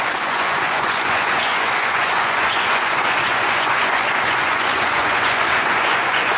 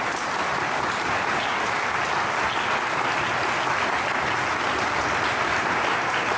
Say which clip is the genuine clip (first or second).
second